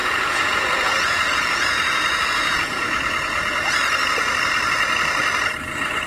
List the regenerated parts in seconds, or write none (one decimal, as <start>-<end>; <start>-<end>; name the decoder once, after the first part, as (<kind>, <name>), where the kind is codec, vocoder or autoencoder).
0.0-3.7 (vocoder, Vocos)